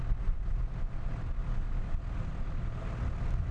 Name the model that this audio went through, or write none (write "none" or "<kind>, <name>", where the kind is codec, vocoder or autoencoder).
none